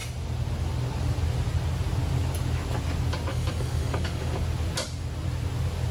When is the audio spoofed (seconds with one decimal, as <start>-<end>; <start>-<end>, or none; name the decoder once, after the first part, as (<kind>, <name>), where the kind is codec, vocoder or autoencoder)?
3.3-4.3 (codec, DAC)